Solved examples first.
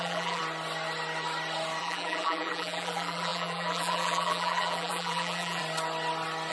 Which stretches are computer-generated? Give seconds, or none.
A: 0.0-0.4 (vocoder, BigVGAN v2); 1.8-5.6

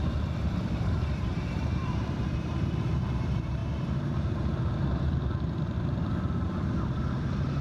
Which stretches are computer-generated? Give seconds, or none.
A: 0.0-7.6 (vocoder, BigVGAN v2)

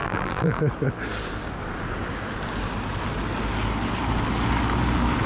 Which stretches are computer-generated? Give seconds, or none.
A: 0.0-0.6 (vocoder, BigVGAN v2)

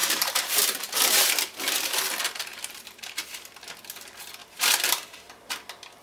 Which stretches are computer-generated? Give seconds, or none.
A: 0.0-0.9 (vocoder, BigVGAN v2); 2.5-3.2; 4.4-5.3

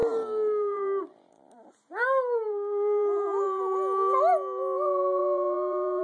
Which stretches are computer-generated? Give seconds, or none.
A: 0.0-3.6 (vocoder, BigVGAN v2); 5.2-6.0